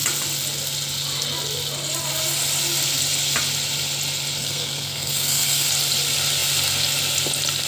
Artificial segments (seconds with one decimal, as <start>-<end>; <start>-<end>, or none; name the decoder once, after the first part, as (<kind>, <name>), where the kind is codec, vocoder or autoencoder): 4.4-5.7 (codec, SNAC)